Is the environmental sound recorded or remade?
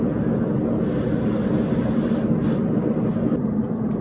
recorded